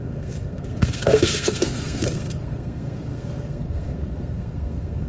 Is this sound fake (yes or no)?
yes